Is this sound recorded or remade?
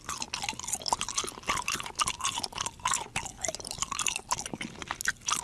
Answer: recorded